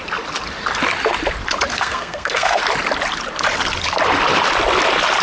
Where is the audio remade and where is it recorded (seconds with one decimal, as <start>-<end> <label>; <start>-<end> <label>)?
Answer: 0.0-1.7 recorded; 1.7-2.6 remade; 2.6-5.2 recorded